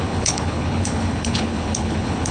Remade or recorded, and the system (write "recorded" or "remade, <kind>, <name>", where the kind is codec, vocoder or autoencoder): remade, codec, HILCodec